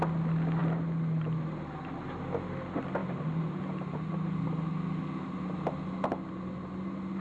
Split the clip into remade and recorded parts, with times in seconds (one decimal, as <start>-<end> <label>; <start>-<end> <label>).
0.0-7.2 recorded